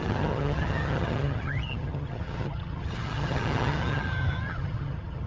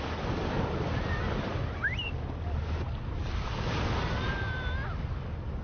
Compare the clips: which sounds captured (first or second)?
second